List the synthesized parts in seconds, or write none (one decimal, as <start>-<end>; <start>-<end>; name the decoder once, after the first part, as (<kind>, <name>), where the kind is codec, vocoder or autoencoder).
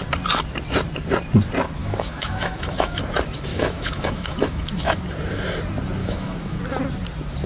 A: 1.8-3.0 (autoencoder, DAC-VAE); 3.5-5.0; 6.0-6.6